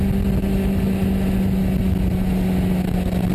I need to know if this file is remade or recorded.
recorded